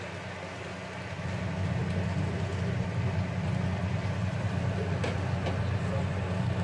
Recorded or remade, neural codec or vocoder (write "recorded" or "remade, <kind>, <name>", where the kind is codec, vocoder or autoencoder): recorded